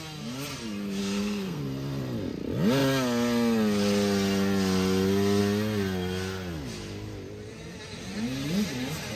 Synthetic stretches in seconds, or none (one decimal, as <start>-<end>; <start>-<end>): 1.0-1.6